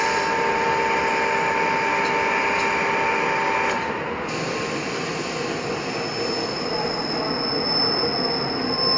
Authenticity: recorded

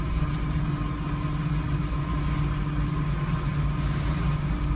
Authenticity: recorded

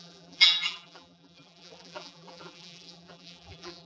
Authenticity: remade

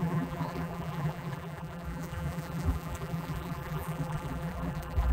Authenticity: remade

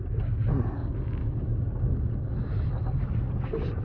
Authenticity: recorded